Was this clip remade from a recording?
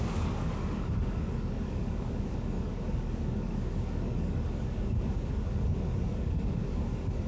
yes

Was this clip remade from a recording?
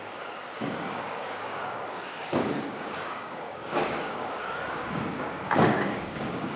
yes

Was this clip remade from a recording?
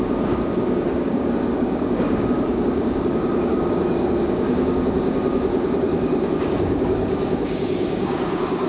yes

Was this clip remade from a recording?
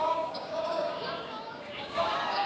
yes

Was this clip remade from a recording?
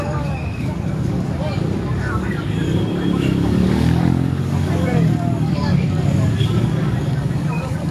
yes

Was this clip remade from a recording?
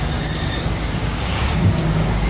yes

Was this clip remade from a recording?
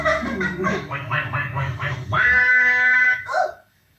yes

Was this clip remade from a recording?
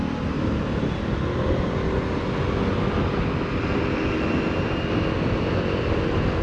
no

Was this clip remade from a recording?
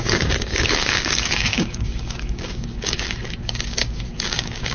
yes